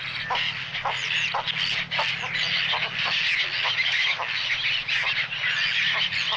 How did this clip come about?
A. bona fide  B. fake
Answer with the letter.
A